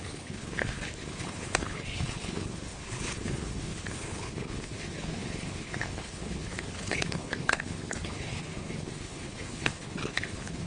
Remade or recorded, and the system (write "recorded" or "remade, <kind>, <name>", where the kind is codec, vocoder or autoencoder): remade, codec, HILCodec